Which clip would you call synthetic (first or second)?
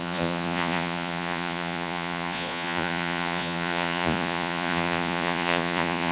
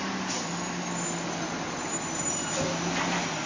first